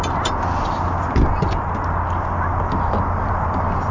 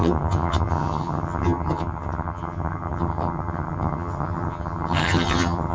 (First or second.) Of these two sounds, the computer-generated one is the second